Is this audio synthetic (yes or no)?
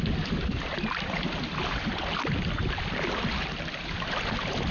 no